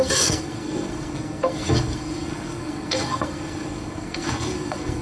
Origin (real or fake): fake